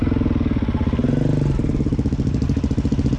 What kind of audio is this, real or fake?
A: real